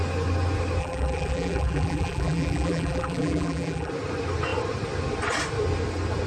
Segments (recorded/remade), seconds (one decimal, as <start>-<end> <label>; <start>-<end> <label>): 0.0-0.8 recorded; 0.8-3.9 remade; 3.9-6.3 recorded